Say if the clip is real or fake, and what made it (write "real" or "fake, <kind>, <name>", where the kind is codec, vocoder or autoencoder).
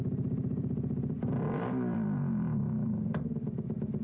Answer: fake, vocoder, BigVGAN v2